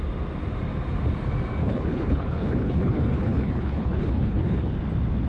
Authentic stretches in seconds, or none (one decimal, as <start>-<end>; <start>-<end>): 0.0-1.6; 4.7-5.3